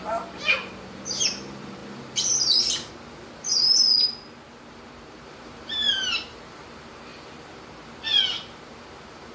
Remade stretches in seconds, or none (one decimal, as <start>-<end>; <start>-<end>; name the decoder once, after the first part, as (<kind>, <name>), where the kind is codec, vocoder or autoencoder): 0.0-3.9 (vocoder, BigVGAN v2); 4.7-9.3